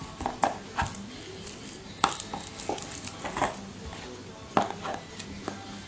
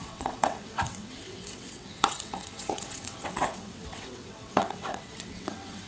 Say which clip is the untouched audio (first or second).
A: first